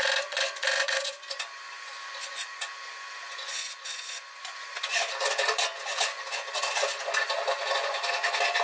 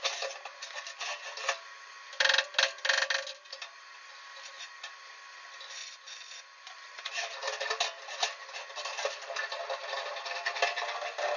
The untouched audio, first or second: second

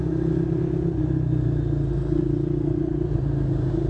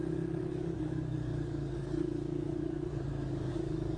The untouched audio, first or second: first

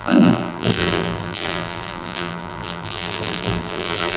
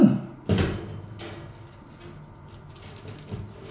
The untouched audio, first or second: second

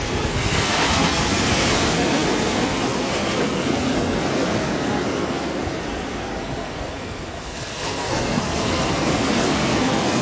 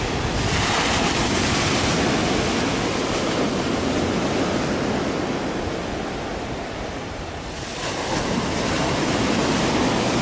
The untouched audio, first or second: second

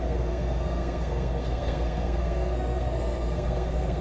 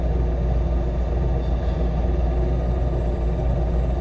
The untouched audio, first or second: second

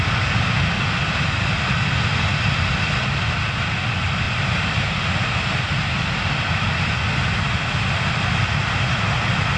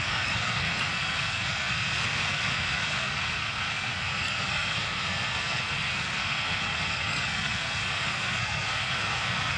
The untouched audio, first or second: first